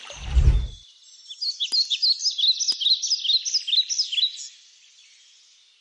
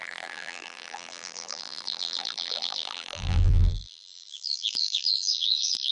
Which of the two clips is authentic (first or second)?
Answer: first